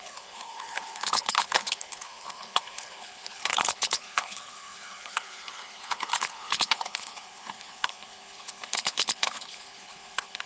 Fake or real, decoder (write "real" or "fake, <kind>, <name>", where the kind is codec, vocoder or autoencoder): fake, codec, HILCodec